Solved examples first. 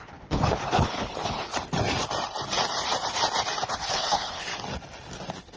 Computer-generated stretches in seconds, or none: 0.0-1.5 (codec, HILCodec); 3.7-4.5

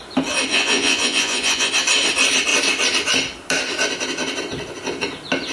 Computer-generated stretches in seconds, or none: 0.5-1.7 (vocoder, Vocos)

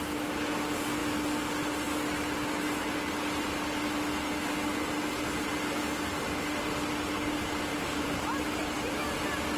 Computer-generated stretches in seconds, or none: 7.7-8.2 (vocoder, BigVGAN v2)

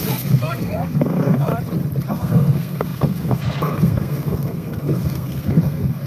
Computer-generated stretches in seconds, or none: 0.0-1.5 (codec, SNAC); 2.1-6.1

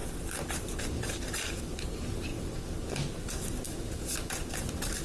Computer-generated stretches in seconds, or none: 0.5-2.3 (vocoder, BigVGAN v2); 4.5-5.0